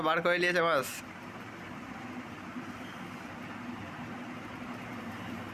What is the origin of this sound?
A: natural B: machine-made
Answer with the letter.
A